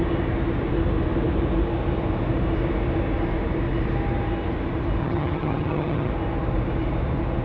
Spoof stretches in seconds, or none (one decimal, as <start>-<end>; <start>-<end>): 5.0-6.1